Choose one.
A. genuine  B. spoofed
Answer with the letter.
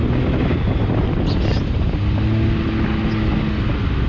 A